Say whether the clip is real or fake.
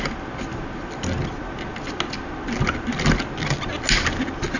real